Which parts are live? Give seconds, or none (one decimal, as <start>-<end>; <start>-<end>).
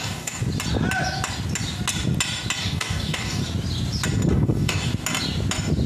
0.4-2.6; 3.4-4.3; 4.9-5.9